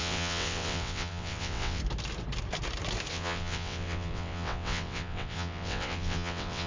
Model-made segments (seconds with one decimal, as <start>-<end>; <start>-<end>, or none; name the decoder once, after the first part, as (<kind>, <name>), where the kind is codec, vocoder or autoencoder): 0.0-1.8 (vocoder, WaveNeXt); 3.1-6.7